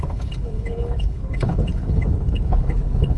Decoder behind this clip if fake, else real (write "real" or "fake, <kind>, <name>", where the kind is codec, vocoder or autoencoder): fake, codec, HILCodec